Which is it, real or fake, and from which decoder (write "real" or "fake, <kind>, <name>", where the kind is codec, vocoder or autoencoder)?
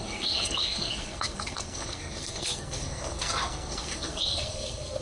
fake, codec, SNAC